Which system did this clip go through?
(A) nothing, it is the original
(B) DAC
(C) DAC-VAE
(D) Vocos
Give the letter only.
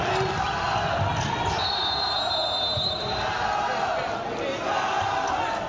A